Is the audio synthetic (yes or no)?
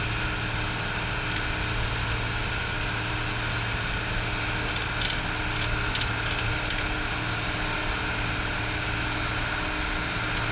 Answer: no